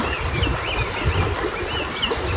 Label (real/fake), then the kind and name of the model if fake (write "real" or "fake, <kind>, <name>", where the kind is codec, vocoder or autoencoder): real